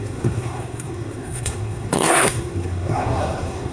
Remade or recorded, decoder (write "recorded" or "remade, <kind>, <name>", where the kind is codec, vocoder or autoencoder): remade, codec, SNAC